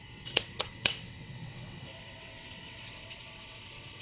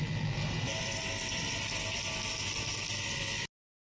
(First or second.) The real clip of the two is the second